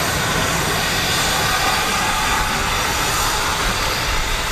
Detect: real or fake real